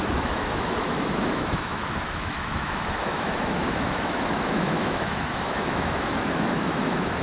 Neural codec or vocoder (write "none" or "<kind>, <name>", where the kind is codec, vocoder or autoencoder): autoencoder, DAC-VAE